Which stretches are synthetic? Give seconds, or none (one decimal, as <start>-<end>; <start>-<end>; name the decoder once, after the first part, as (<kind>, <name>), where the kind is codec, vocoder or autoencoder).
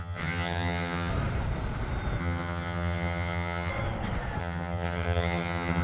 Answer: 0.0-1.1 (vocoder, HiFi-GAN); 2.2-3.7; 4.4-5.8